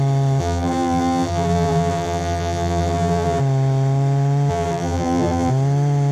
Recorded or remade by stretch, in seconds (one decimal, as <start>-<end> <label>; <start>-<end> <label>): 0.0-0.4 recorded; 0.4-3.4 remade; 3.4-4.5 recorded; 4.5-5.5 remade; 5.5-6.1 recorded